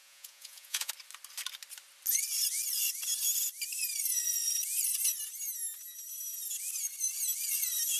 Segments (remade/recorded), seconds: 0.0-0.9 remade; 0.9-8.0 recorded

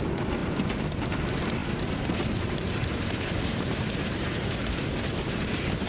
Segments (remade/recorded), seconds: 0.0-1.6 recorded; 1.6-5.1 remade; 5.1-5.9 recorded

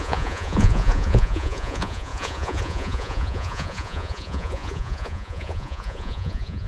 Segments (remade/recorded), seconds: 0.0-6.7 remade

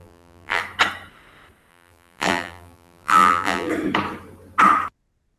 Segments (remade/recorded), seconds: 0.0-0.6 remade; 0.6-1.7 recorded; 1.7-3.7 remade; 3.7-5.4 recorded